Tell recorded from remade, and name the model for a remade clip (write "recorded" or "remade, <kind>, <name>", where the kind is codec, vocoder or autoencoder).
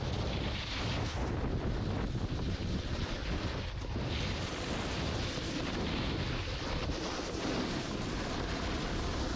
recorded